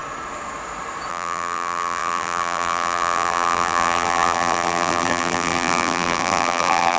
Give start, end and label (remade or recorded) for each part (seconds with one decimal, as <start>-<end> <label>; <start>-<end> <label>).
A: 0.0-1.1 recorded; 1.1-7.0 remade